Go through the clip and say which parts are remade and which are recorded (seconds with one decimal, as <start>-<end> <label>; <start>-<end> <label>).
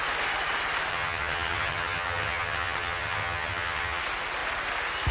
0.0-0.9 recorded; 0.9-4.0 remade; 4.0-5.1 recorded